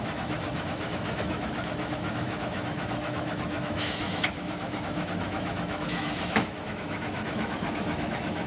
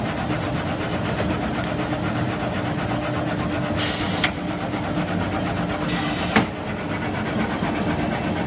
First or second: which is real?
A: second